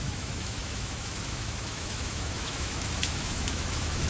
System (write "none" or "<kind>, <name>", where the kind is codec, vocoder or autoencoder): autoencoder, DAC-VAE